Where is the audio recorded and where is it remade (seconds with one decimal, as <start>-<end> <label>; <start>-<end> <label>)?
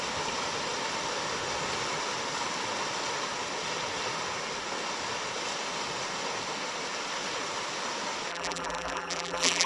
0.0-8.3 recorded; 8.3-9.7 remade